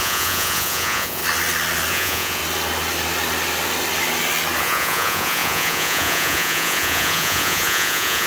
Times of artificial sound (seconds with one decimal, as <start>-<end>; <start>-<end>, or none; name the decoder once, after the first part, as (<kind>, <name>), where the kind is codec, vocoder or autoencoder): 0.0-1.2 (vocoder, Vocos); 1.9-2.4; 4.6-8.3